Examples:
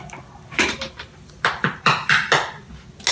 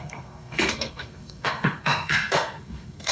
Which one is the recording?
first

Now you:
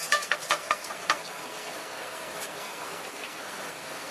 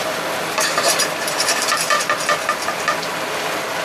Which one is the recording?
second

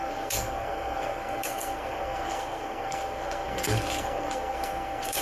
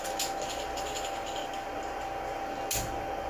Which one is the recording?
second